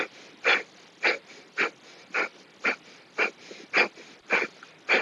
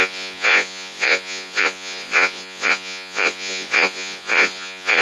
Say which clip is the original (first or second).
first